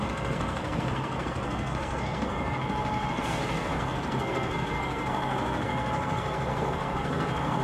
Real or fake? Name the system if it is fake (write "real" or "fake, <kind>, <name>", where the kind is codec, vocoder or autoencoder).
fake, codec, SNAC